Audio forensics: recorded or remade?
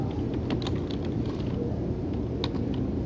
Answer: recorded